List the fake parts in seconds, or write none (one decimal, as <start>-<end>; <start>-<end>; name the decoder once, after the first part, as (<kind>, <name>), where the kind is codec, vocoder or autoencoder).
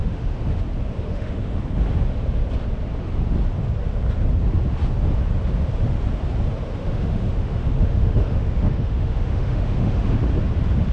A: 0.0-0.6 (autoencoder, DAC-VAE); 1.0-1.6; 6.8-10.1